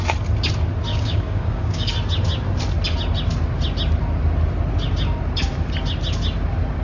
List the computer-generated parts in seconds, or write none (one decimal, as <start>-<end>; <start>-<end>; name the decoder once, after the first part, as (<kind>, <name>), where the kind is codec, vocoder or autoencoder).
0.9-1.9 (codec, DAC)

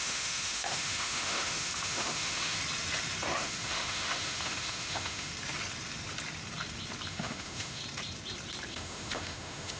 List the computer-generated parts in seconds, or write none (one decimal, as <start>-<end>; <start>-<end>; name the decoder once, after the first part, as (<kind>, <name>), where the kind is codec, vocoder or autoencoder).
0.0-2.6 (autoencoder, DAC-VAE); 3.4-5.3; 7.1-7.8; 8.7-9.8

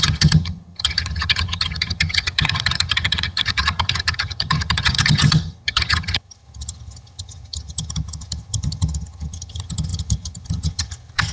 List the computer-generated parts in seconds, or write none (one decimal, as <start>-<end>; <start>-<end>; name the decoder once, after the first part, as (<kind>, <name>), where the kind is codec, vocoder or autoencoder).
0.0-11.3 (vocoder, HiFi-GAN)

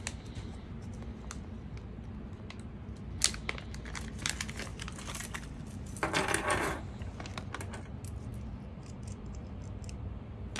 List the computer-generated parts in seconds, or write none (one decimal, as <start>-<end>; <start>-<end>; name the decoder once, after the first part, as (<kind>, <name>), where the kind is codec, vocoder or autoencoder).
4.7-6.8 (vocoder, BigVGAN v2); 8.3-10.6

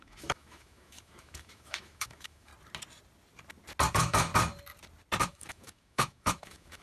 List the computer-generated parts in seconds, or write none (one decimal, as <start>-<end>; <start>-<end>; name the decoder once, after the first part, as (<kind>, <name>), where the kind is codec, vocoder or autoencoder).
0.0-2.5 (autoencoder, DAC-VAE); 3.9-4.3; 5.2-6.8